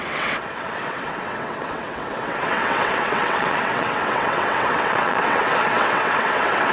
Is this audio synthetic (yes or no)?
yes